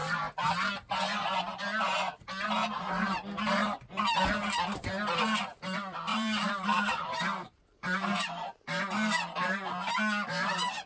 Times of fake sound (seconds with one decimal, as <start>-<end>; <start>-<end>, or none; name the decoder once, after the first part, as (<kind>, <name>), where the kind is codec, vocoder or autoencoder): 6.1-9.9 (vocoder, BigVGAN v2)

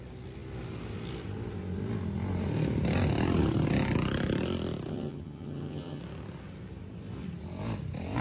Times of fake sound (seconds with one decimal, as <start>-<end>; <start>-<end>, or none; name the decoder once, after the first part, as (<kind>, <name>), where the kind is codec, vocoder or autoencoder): 4.9-6.0 (vocoder, HiFi-GAN)

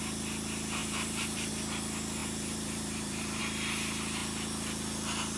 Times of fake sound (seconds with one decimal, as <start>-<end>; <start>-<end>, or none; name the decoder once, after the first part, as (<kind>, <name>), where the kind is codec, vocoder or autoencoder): 0.8-1.5 (vocoder, BigVGAN v2); 2.2-3.4

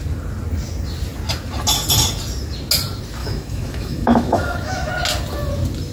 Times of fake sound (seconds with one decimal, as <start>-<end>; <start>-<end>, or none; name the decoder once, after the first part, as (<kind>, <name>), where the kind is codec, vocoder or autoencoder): 3.2-4.9 (autoencoder, DAC-VAE)

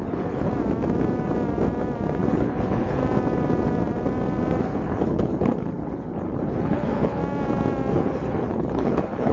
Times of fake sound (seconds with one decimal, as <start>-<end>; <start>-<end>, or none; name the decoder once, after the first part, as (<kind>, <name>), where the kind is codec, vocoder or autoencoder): 0.0-0.5 (codec, HILCodec); 2.3-3.0; 4.6-7.2; 7.9-9.3

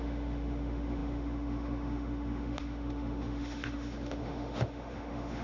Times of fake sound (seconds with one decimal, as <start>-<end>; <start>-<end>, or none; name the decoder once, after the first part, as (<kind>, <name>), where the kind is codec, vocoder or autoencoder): 0.0-5.4 (autoencoder, DAC-VAE)

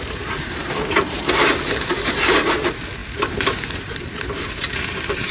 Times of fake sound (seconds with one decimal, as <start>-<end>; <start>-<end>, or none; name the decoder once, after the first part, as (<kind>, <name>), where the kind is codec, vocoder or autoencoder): 0.0-5.3 (vocoder, BigVGAN v2)

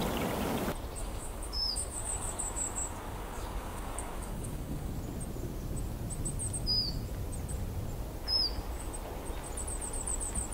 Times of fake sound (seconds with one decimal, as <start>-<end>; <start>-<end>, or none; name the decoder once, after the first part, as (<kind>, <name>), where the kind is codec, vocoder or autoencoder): 1.0-4.9 (codec, DAC)